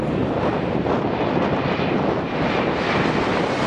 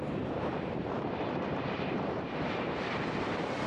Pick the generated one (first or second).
second